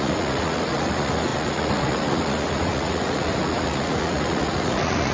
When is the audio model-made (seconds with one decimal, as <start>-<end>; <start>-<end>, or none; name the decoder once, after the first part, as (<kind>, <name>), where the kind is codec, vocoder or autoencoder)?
0.0-5.1 (vocoder, Vocos)